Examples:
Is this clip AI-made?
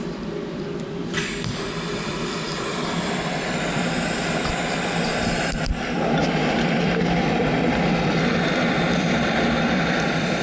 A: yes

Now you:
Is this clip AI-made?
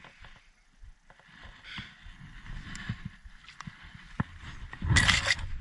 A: no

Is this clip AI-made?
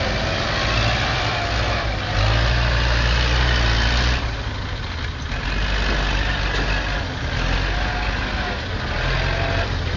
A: no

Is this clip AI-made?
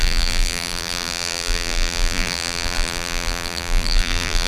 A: yes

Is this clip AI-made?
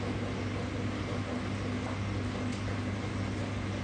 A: no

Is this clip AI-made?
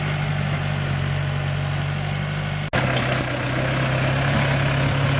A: no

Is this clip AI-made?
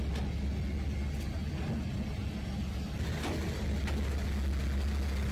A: no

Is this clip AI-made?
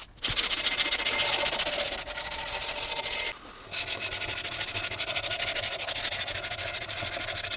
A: no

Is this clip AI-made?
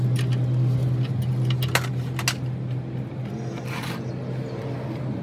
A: no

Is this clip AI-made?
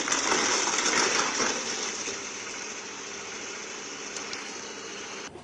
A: yes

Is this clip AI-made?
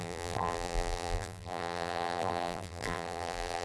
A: yes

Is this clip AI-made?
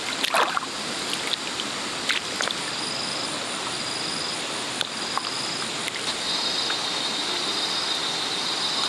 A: no